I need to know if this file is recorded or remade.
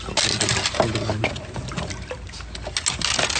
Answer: recorded